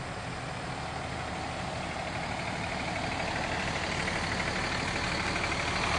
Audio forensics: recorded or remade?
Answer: recorded